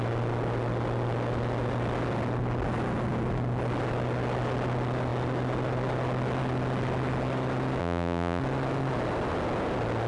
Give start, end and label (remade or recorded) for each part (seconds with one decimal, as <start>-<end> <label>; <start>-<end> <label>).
0.0-7.8 recorded; 7.8-8.4 remade; 8.4-10.1 recorded